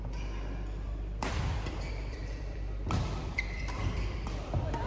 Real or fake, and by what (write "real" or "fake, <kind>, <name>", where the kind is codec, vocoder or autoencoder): fake, vocoder, BigVGAN v2